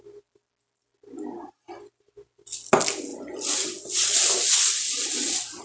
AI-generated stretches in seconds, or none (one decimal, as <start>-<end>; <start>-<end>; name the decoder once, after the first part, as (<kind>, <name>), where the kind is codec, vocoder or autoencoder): none